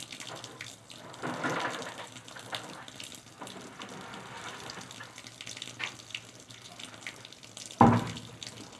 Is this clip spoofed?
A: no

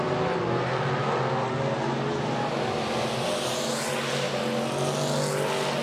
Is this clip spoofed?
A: no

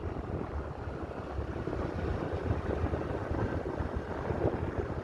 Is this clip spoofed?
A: no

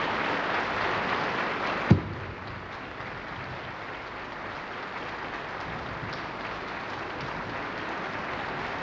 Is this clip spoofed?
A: no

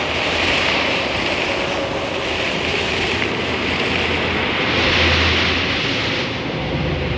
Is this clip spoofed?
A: no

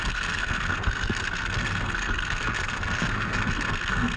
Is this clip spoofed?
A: yes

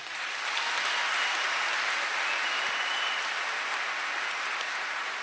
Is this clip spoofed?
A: no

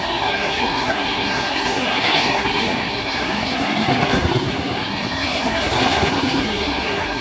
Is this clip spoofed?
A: yes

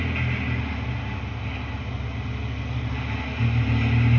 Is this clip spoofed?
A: no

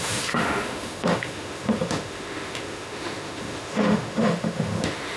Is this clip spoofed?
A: yes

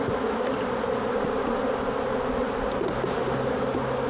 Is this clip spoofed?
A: no